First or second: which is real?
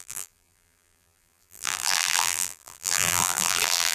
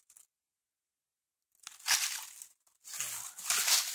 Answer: second